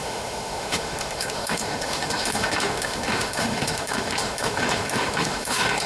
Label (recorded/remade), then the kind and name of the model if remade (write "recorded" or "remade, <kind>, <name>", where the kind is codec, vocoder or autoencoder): remade, autoencoder, DAC-VAE